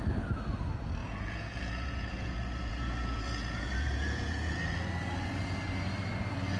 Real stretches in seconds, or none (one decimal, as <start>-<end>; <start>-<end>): 0.0-1.0; 4.5-6.6